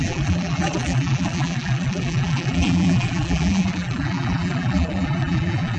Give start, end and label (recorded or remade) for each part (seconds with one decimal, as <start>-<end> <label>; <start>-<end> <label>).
0.0-5.8 remade